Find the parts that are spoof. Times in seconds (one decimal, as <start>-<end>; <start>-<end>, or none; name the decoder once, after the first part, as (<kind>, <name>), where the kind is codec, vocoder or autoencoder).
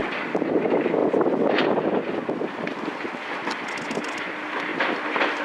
none